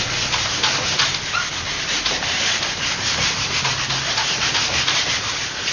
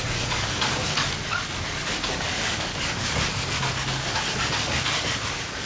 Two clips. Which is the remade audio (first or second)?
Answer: second